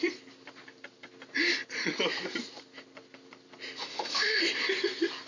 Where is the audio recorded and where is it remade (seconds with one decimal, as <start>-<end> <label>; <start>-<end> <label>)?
0.0-3.8 recorded; 3.8-4.4 remade; 4.4-5.3 recorded